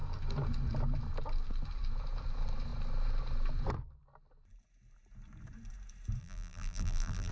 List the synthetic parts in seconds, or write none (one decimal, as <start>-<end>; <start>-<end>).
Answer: 6.2-7.3